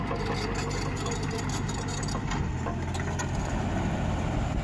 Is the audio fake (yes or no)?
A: no